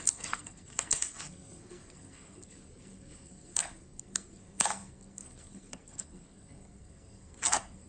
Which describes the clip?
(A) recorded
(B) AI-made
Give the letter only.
B